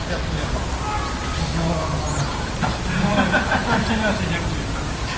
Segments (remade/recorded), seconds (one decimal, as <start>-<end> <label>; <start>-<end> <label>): 0.0-5.2 recorded